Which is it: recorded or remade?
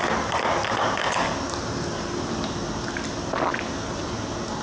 recorded